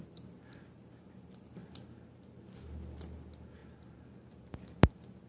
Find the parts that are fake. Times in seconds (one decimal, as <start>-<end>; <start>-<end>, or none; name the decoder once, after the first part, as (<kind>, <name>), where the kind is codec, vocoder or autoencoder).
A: none